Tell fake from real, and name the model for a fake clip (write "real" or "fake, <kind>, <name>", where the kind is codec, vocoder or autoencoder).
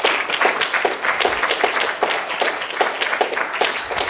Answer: real